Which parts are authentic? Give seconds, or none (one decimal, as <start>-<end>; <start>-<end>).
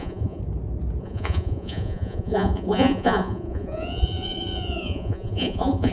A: 0.4-1.0